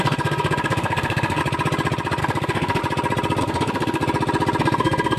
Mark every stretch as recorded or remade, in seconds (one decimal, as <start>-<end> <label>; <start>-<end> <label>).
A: 0.0-1.4 remade; 1.4-2.2 recorded; 2.2-2.8 remade; 2.8-3.4 recorded; 3.4-4.0 remade; 4.0-4.6 recorded; 4.6-5.2 remade